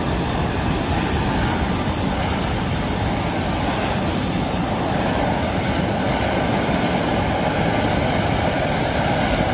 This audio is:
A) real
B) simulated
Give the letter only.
B